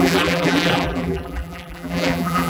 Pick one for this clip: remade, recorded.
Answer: remade